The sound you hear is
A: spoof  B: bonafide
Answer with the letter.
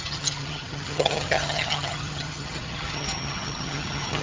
A